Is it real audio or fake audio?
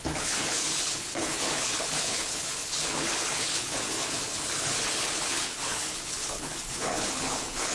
fake